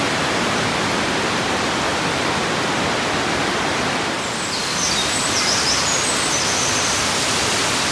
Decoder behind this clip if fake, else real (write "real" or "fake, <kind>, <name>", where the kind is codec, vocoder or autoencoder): real